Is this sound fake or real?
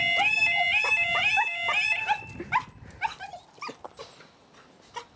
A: real